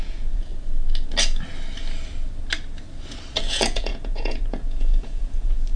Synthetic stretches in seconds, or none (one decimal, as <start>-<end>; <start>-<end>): 0.0-0.5; 3.4-5.8

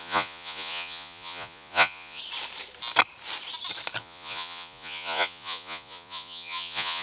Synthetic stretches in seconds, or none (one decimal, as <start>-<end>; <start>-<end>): 0.0-2.2; 4.0-7.0

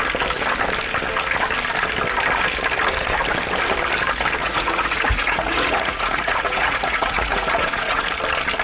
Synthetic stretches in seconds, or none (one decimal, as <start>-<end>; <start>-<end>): 4.4-8.1

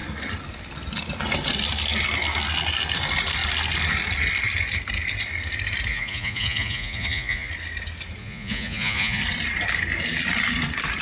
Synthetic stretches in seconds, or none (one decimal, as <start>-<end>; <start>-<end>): 5.9-7.5; 8.2-9.2

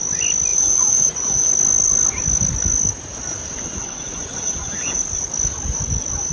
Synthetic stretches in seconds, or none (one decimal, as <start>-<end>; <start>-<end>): 0.5-1.5; 3.4-5.0

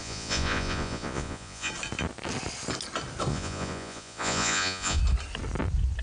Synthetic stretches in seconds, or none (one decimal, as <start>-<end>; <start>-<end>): 0.0-1.7; 3.3-5.0

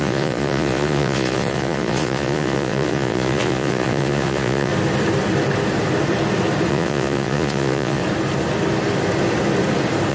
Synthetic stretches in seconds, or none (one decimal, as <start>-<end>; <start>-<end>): 0.0-4.7; 6.7-8.0

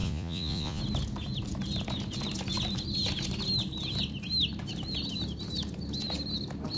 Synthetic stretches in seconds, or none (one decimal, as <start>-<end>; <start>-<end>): 0.0-0.8